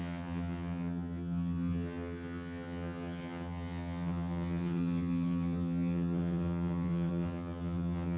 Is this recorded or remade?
remade